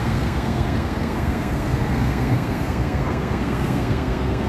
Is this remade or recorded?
remade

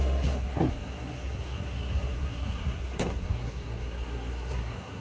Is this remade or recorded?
remade